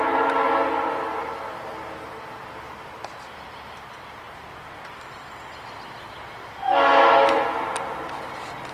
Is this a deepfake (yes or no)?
no